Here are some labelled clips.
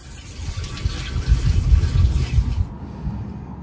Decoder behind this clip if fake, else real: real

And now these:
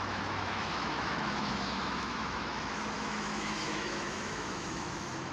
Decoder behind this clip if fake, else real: fake, autoencoder, DAC-VAE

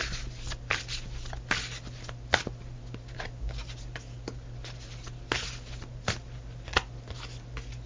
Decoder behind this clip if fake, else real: real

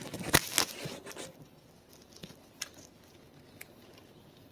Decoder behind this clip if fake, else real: real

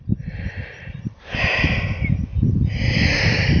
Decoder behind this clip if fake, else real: real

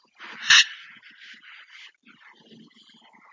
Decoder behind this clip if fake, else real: real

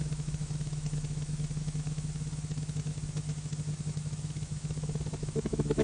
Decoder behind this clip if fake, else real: fake, autoencoder, DAC-VAE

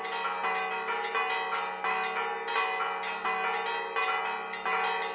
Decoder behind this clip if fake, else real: real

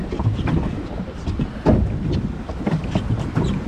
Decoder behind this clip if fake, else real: real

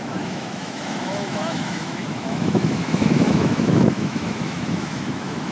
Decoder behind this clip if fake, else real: fake, autoencoder, DAC-VAE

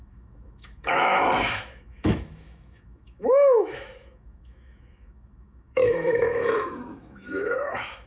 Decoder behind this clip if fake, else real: fake, autoencoder, DAC-VAE